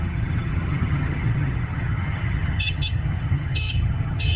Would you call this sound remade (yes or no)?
yes